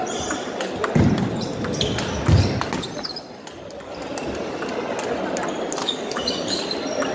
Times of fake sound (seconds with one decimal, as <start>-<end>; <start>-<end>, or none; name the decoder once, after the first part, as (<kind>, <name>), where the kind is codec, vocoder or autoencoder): 5.8-6.6 (codec, DAC)